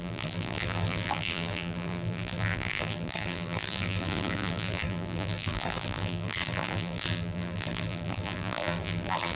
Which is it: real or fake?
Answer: fake